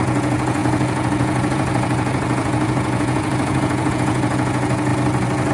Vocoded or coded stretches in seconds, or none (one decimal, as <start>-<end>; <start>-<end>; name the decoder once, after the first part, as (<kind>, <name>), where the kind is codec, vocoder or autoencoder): 0.0-4.9 (vocoder, Vocos)